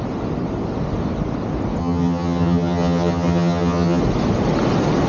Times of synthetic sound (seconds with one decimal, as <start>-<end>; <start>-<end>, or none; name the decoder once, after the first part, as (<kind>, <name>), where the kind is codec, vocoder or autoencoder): 1.8-4.0 (vocoder, HiFi-GAN)